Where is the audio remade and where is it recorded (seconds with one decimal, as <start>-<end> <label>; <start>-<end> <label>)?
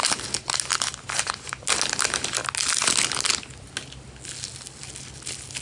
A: 0.0-5.6 recorded